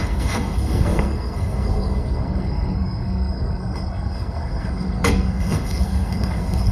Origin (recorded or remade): remade